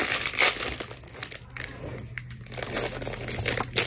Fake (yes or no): no